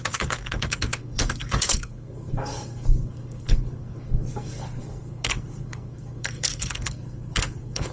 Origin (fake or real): fake